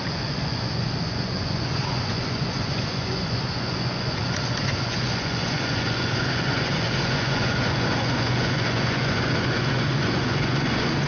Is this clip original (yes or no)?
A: no